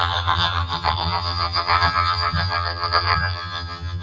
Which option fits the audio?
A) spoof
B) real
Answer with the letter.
A